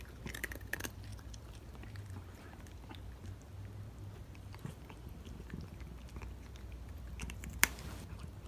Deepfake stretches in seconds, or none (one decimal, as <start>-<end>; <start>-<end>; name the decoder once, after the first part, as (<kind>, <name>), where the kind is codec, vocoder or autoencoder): none